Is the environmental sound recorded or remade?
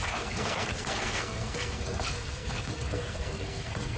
remade